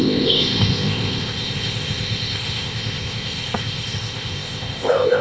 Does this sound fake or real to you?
fake